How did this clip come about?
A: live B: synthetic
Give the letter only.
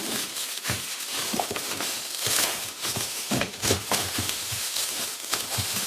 B